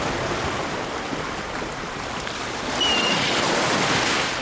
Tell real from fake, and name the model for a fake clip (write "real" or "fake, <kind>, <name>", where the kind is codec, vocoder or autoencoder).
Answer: real